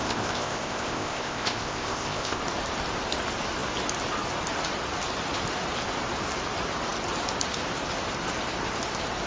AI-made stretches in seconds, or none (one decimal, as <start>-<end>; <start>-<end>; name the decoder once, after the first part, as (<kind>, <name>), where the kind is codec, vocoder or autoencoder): 0.0-2.4 (codec, ZipCodec)